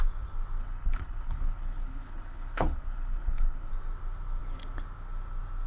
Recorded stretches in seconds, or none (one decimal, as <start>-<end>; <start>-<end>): 0.0-0.6; 3.7-5.7